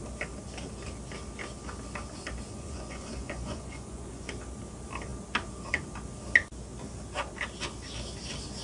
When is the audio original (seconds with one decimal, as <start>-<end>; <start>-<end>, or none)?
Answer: 0.0-2.5; 4.3-8.6